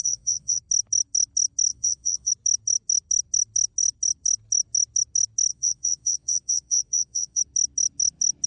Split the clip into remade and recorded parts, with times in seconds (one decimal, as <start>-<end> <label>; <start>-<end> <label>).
0.0-0.6 remade; 0.6-1.7 recorded; 1.7-2.3 remade; 2.3-5.5 recorded; 5.5-7.4 remade; 7.4-8.5 recorded